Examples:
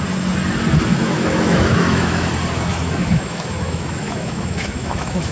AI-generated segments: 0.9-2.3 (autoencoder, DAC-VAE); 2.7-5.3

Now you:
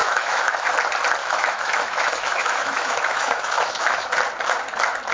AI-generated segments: 0.0-0.7 (autoencoder, DAC-VAE); 1.2-4.1

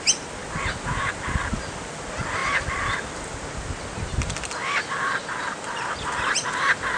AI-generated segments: none

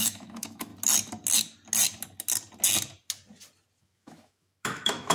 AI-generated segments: 0.0-0.7 (autoencoder, DAC-VAE); 3.8-5.1

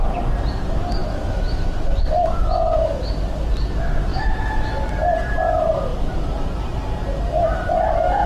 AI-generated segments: 1.0-3.2 (autoencoder, DAC-VAE); 4.1-4.7